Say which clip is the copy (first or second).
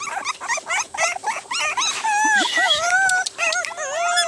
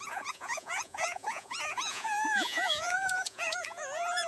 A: second